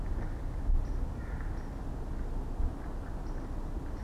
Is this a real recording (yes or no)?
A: yes